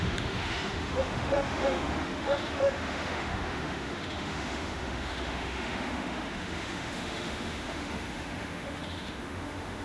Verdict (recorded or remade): remade